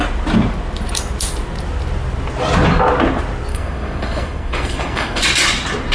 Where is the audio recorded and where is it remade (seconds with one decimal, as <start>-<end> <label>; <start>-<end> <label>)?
0.0-3.5 recorded; 3.5-5.2 remade; 5.2-5.9 recorded